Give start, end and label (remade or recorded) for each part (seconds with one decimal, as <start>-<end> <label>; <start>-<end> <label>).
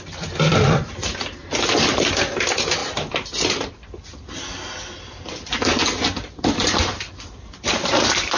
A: 0.0-1.1 remade; 1.1-1.9 recorded; 1.9-8.4 remade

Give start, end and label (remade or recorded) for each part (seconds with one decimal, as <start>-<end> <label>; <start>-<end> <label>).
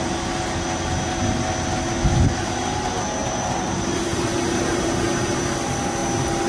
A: 0.0-3.2 recorded; 3.2-5.5 remade; 5.5-6.0 recorded; 6.0-6.5 remade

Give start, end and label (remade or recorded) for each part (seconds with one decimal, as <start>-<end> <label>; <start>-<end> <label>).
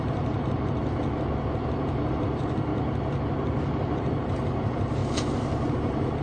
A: 0.0-0.8 remade; 0.8-1.7 recorded; 1.7-2.7 remade; 2.7-4.0 recorded; 4.0-5.0 remade; 5.0-5.7 recorded; 5.7-6.2 remade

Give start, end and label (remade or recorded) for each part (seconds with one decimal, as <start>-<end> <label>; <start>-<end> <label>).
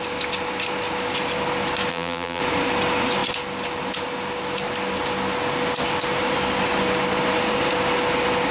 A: 0.0-1.9 recorded; 1.9-2.4 remade; 2.4-8.5 recorded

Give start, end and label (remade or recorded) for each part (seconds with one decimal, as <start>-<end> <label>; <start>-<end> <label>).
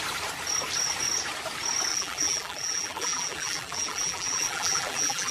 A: 0.0-1.9 recorded; 1.9-5.3 remade